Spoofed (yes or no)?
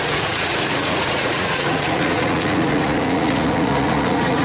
yes